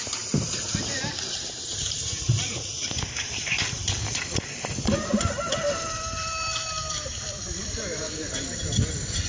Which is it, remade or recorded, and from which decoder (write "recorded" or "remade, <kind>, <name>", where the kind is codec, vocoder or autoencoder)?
remade, vocoder, BigVGAN v2